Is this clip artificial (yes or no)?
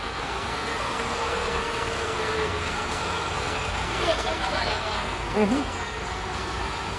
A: yes